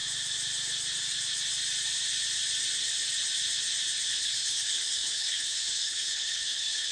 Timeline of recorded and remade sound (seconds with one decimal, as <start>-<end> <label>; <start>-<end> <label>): 0.0-4.1 recorded; 4.1-6.9 remade